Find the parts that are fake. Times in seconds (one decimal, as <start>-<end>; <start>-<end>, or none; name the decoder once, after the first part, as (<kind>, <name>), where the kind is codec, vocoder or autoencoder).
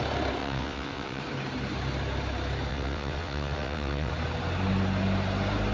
0.4-1.2 (vocoder, WaveNeXt); 2.7-4.1